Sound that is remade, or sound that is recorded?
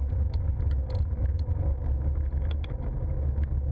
recorded